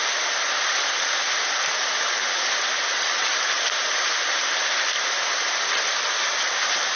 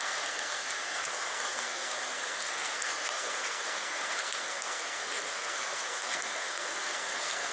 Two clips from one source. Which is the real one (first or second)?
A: first